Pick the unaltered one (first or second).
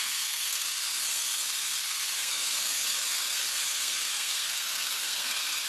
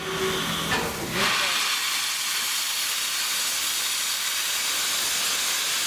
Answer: second